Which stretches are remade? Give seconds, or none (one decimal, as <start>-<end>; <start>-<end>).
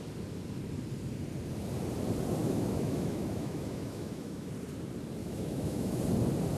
2.4-4.5; 5.2-6.0